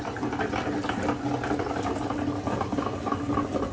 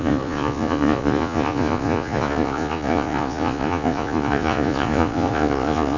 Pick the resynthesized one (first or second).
second